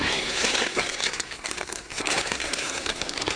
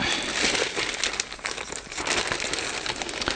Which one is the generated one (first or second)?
first